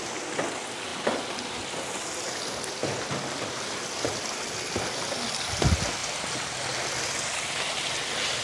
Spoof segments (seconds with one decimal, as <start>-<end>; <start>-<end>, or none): none